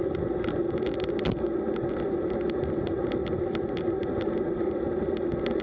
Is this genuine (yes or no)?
yes